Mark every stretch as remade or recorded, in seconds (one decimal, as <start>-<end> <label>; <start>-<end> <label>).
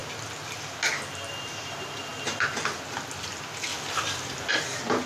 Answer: 0.0-3.7 recorded; 3.7-4.5 remade; 4.5-5.1 recorded